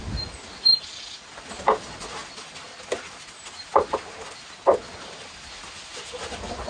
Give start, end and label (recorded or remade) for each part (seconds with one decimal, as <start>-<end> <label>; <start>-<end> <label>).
0.0-6.7 recorded